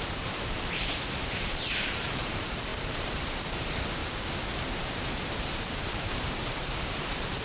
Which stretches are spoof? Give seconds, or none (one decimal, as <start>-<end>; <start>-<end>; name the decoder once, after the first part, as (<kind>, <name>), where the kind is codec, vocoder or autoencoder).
0.0-4.0 (vocoder, BigVGAN v2); 4.6-7.4